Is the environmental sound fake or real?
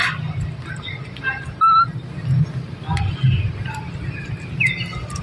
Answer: real